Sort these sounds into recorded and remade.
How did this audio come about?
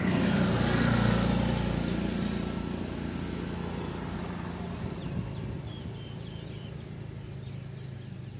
recorded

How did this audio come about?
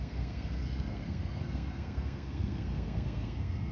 remade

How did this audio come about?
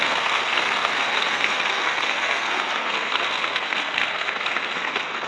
remade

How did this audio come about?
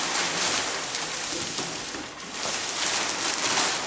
recorded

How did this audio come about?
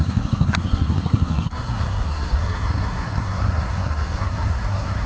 remade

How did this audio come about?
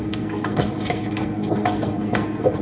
remade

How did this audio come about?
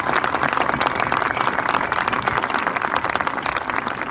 recorded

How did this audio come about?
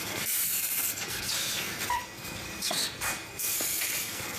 remade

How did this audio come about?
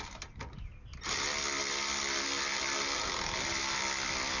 recorded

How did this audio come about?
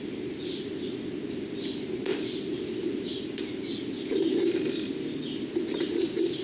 recorded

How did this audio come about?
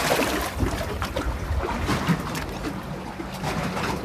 recorded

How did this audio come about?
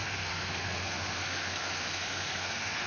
remade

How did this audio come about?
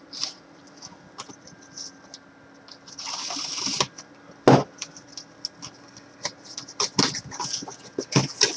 recorded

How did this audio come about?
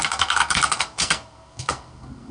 remade